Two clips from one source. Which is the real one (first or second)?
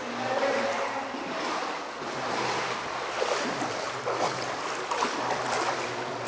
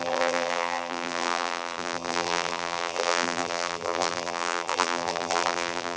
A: first